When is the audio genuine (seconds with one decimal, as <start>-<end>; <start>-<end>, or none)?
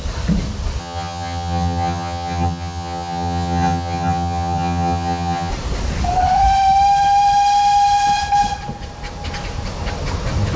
0.0-0.8; 5.5-10.6